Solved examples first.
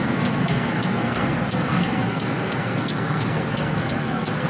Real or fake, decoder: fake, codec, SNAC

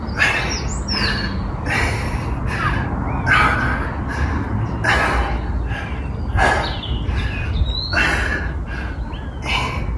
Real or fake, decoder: real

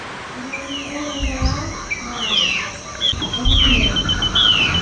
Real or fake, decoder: real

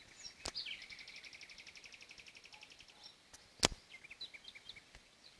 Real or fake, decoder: real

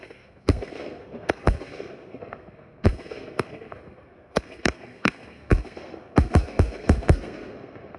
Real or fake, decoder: fake, codec, SNAC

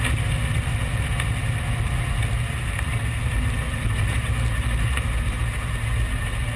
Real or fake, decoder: real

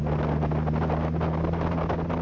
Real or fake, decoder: real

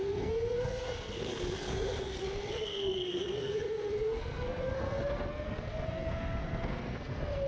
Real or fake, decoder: fake, codec, SNAC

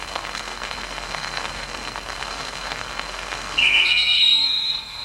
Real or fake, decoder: fake, codec, SNAC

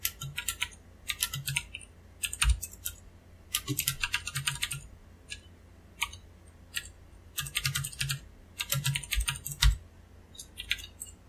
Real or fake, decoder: real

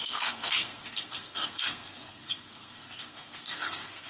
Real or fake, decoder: fake, codec, SNAC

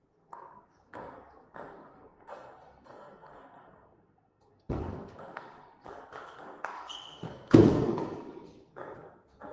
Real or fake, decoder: fake, codec, SNAC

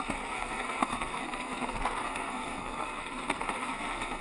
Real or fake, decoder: fake, codec, SNAC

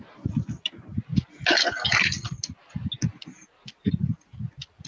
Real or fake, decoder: real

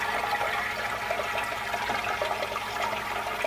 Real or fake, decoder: real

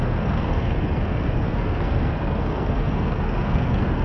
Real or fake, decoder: fake, codec, SNAC